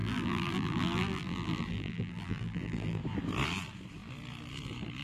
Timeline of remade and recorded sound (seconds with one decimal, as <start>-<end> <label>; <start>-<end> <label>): 0.0-3.0 remade; 3.0-5.0 recorded